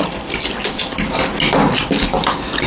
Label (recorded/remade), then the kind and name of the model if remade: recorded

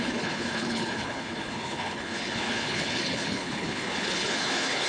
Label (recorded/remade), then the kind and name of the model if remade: remade, codec, HILCodec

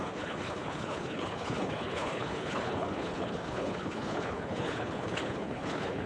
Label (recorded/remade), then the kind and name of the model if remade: remade, codec, HILCodec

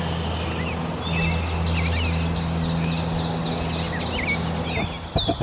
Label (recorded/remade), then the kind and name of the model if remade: recorded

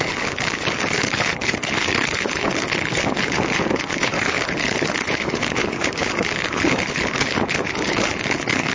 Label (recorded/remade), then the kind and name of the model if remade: remade, codec, HILCodec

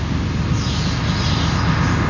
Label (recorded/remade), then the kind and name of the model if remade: recorded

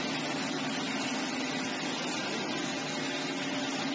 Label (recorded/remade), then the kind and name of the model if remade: recorded